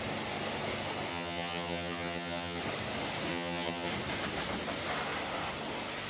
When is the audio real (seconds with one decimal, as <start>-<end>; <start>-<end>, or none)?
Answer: 0.0-1.1; 2.6-3.3; 3.9-6.1